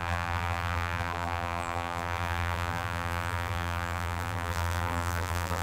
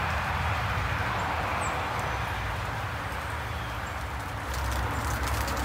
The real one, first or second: second